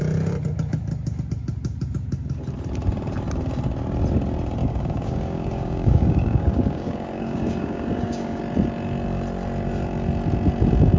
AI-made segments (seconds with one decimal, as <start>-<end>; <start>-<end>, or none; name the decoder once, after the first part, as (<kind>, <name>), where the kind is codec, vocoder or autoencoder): 4.6-8.4 (codec, DAC)